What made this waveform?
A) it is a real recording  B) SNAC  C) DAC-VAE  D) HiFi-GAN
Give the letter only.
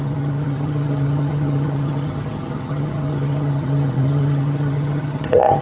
D